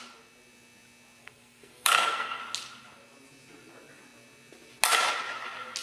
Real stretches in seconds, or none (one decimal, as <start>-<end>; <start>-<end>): 0.0-1.2; 2.4-5.8